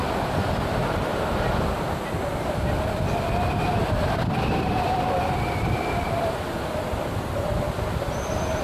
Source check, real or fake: real